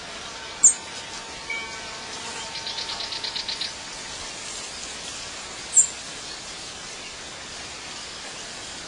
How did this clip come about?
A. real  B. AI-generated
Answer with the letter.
A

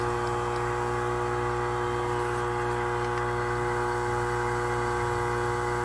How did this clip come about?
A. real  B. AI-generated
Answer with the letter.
A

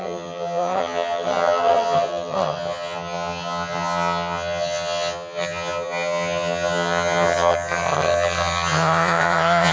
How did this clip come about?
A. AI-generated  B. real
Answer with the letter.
A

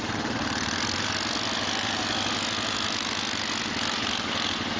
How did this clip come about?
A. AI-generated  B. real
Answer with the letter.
B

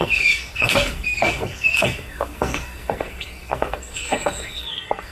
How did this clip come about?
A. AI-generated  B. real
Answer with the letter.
A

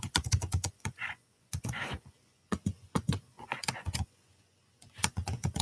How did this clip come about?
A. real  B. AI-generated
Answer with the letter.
B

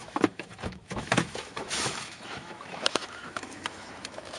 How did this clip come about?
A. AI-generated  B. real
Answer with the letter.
A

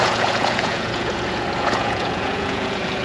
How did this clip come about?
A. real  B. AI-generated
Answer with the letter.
B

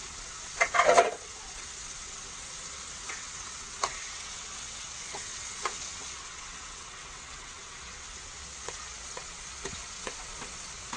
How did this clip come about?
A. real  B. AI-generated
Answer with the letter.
B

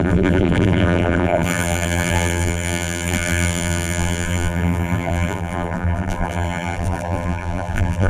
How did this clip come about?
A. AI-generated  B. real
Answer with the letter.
A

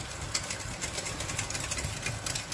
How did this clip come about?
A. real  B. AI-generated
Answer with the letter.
A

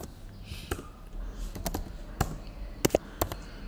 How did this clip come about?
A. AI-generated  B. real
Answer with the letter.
B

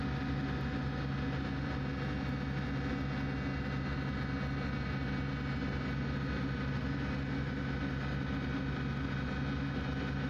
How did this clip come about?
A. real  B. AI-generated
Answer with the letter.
A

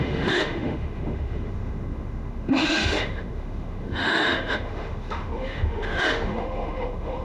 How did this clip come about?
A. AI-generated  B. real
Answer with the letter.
A